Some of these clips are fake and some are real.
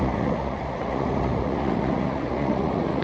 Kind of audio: fake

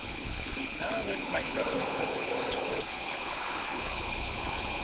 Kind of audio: fake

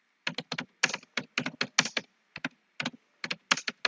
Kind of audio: real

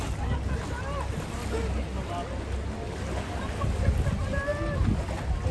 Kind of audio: real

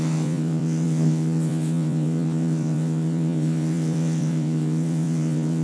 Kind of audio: fake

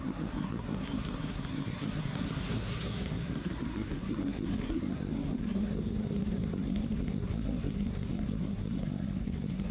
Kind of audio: fake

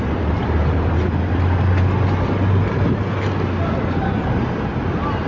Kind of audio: real